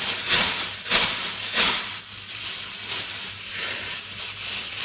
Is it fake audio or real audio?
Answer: fake